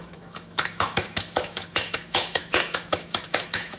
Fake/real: fake